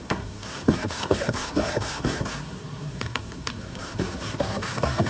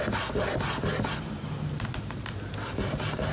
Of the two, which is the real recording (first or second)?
second